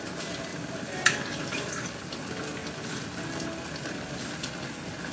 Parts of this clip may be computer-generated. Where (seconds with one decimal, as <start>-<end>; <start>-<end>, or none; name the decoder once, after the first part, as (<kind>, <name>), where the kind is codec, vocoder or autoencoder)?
0.5-1.9 (vocoder, BigVGAN v2)